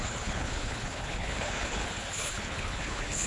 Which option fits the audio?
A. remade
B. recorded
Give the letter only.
A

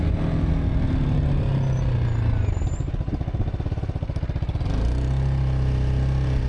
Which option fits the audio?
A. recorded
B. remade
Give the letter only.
A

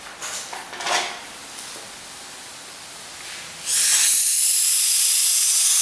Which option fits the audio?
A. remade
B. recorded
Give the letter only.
B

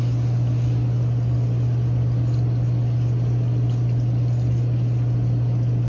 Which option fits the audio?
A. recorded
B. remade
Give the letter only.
A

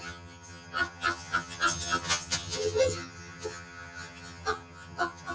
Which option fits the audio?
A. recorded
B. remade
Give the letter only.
B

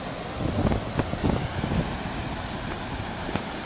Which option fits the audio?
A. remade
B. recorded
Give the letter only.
B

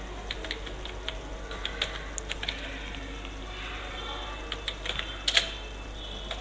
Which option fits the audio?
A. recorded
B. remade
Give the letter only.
A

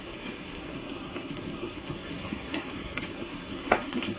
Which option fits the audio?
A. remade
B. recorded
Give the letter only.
A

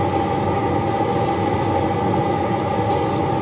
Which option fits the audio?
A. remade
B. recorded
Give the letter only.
B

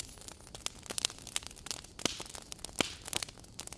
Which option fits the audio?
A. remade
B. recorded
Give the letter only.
B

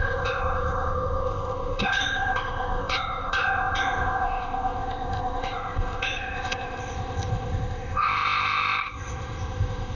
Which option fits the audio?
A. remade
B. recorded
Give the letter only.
A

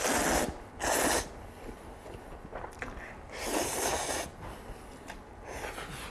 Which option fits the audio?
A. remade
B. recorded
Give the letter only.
B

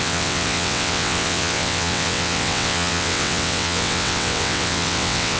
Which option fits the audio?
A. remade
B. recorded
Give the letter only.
A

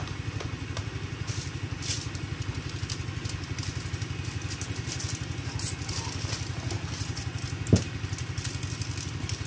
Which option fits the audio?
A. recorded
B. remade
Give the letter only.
A